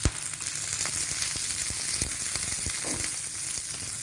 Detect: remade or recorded recorded